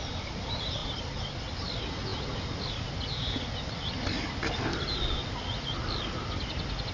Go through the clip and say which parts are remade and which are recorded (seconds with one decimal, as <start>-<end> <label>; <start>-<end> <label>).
0.0-6.9 recorded